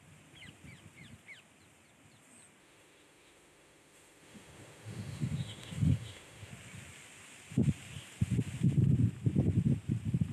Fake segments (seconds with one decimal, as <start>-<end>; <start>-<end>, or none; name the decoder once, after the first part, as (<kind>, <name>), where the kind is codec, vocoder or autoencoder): 2.6-6.5 (autoencoder, DAC-VAE)